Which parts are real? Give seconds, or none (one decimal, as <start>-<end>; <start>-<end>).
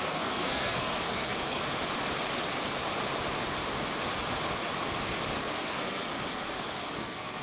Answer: 1.6-5.4